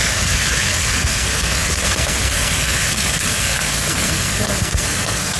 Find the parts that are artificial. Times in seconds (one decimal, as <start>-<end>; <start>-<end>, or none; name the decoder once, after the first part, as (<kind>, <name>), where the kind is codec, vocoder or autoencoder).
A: 0.0-5.4 (codec, SNAC)

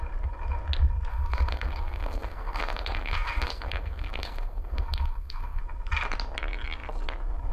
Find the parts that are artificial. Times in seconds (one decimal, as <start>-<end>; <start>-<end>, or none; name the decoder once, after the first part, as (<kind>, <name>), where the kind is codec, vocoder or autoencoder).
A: 1.1-5.6 (codec, SNAC)

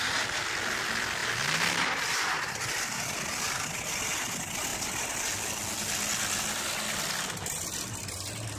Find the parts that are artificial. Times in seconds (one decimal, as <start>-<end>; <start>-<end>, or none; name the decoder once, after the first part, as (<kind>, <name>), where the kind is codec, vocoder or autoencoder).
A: none

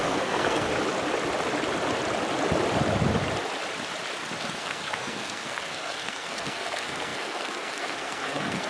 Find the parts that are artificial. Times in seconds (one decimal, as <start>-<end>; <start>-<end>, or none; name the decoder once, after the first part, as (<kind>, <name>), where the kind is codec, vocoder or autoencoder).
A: 0.0-0.7 (codec, SNAC); 4.4-8.7

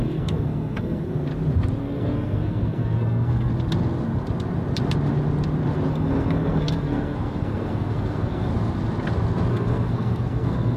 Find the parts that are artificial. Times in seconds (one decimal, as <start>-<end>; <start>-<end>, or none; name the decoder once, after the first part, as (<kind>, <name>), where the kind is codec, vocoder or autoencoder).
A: 0.0-1.3 (codec, SNAC); 1.8-3.5; 5.9-8.5; 9.5-10.8

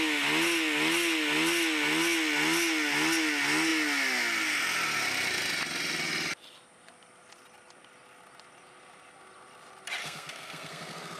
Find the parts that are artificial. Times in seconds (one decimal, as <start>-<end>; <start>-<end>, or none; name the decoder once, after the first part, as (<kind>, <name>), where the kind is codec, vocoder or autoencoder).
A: 10.0-11.2 (codec, SNAC)

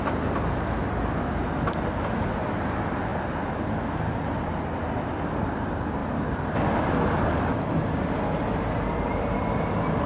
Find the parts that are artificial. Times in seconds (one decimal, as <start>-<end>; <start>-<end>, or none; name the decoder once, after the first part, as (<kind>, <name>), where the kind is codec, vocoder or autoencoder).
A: none